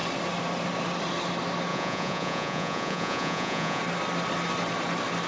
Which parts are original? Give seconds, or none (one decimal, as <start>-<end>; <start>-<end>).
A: 0.0-1.7; 3.8-5.3